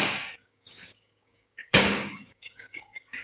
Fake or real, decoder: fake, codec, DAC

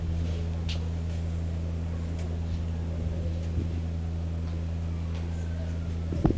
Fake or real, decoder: real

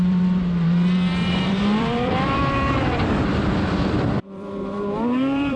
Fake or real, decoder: fake, vocoder, BigVGAN v2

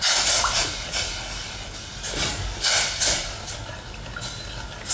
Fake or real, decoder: real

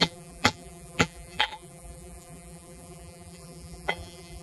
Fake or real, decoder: fake, vocoder, BigVGAN v2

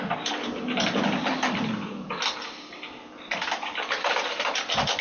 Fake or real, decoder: fake, vocoder, BigVGAN v2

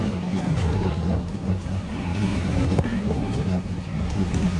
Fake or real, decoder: fake, codec, SNAC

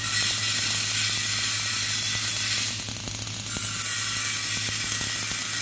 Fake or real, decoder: real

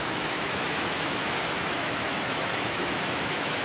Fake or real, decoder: fake, autoencoder, DAC-VAE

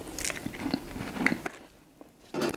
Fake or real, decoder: real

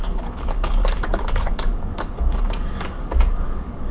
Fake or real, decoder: fake, codec, DAC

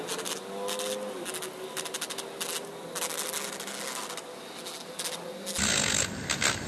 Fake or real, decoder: real